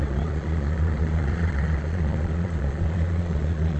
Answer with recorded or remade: remade